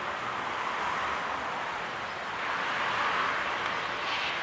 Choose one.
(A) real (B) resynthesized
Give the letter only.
A